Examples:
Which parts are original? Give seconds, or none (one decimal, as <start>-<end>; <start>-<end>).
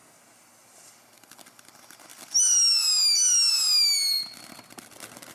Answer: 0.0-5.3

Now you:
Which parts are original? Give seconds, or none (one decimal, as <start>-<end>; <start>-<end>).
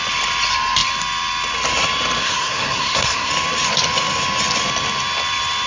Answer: 0.0-2.2; 3.3-5.7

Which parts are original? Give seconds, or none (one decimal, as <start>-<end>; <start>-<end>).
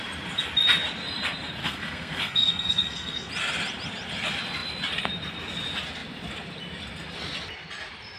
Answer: 0.0-1.6; 3.3-8.2